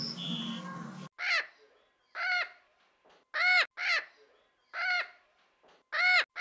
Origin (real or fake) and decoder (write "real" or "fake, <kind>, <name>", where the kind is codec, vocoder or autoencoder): real